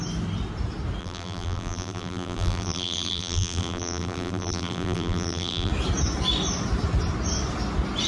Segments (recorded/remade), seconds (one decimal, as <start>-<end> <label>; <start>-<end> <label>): 0.0-1.0 recorded; 1.0-5.7 remade; 5.7-8.1 recorded